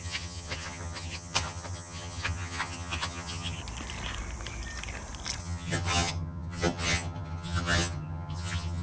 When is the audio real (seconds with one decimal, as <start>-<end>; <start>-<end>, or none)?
3.6-5.4